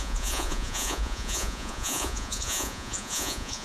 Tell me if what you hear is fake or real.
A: fake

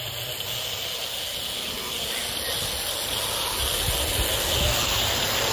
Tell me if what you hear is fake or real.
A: real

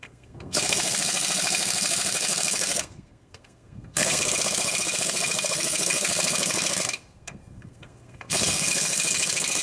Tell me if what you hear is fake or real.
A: fake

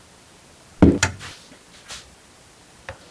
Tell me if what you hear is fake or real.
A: real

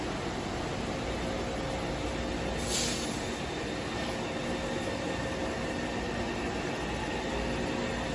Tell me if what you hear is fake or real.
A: real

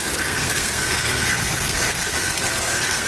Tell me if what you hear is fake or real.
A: fake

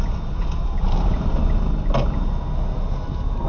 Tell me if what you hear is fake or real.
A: real